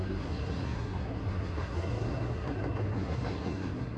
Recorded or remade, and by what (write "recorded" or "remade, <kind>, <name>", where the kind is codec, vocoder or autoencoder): remade, codec, SNAC